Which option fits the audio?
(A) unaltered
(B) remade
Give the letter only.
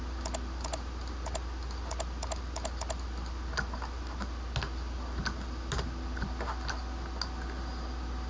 A